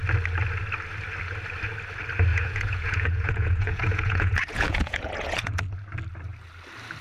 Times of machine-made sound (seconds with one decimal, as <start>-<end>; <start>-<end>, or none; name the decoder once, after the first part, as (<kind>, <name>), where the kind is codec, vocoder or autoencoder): 2.3-5.6 (vocoder, Vocos)